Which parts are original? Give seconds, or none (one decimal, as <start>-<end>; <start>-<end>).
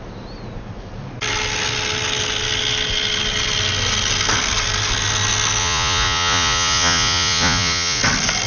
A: 0.0-5.6; 8.0-8.5